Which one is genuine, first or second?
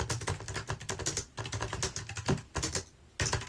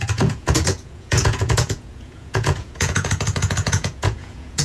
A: first